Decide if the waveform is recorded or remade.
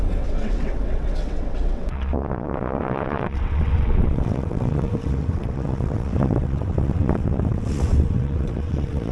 remade